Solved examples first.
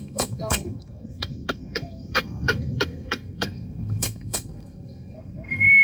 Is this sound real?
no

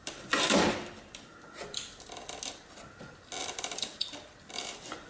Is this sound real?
yes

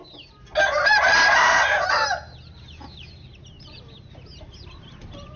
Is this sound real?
yes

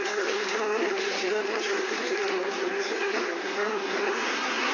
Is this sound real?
no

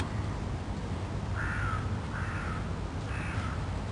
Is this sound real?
yes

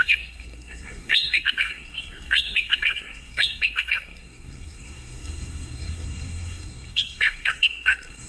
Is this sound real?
no